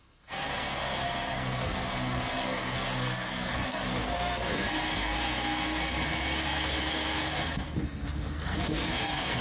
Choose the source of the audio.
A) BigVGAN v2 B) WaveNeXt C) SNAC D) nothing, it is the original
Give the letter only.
C